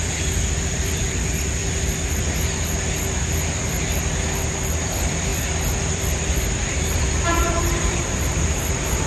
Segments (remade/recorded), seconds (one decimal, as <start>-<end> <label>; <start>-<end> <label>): 0.0-1.6 remade; 1.6-4.4 recorded; 4.4-5.3 remade; 5.3-5.9 recorded; 5.9-9.1 remade